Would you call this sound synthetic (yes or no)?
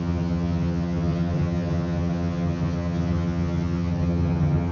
yes